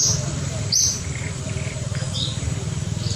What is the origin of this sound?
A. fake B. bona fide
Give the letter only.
A